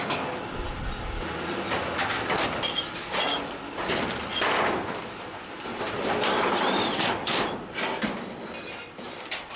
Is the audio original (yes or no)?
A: yes